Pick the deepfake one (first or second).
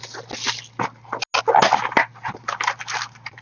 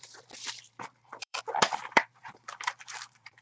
second